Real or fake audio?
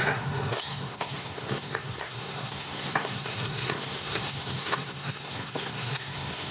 fake